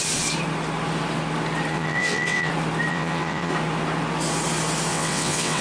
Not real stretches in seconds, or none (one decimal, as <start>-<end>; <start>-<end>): 1.7-2.5; 2.9-3.5; 4.9-5.6